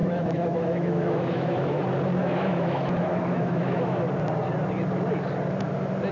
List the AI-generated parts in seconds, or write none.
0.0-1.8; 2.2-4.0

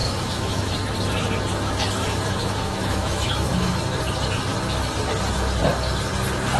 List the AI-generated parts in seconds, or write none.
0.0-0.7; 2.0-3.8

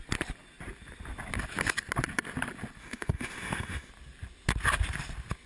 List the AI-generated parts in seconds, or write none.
2.8-3.9

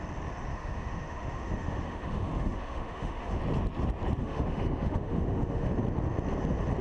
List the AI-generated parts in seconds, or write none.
0.5-3.4; 4.2-5.7

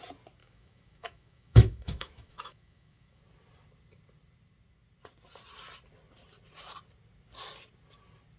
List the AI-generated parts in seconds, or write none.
0.4-3.2

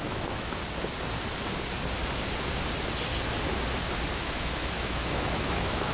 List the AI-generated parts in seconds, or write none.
0.0-0.6; 4.1-5.9